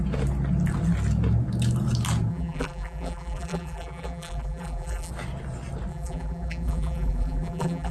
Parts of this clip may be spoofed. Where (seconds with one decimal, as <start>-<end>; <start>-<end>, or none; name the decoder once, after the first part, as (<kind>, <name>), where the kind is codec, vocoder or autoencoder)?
2.3-5.1 (vocoder, BigVGAN v2); 5.9-7.9